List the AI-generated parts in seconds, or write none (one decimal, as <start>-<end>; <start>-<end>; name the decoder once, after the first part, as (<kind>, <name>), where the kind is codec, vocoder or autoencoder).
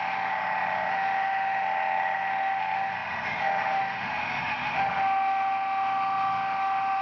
0.0-7.0 (autoencoder, DAC-VAE)